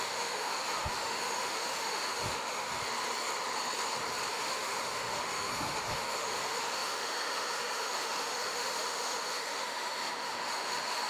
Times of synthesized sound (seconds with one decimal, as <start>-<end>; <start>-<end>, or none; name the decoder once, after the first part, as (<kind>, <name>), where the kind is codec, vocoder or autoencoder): 0.0-2.8 (autoencoder, DAC-VAE); 4.3-11.1